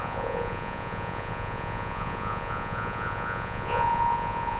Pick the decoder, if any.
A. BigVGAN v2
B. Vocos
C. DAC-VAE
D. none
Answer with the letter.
B